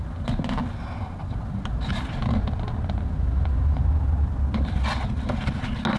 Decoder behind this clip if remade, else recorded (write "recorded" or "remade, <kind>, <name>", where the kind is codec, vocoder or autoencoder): recorded